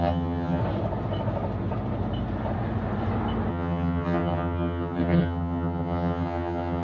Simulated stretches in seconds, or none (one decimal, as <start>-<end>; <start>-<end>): 0.0-0.6; 3.5-6.8